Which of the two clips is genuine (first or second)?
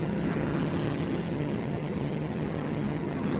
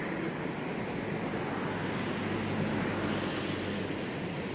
second